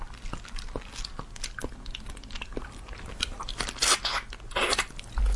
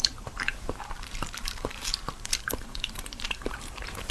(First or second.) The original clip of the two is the first